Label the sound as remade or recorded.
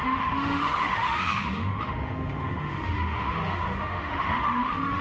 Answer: remade